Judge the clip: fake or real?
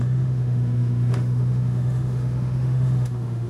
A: fake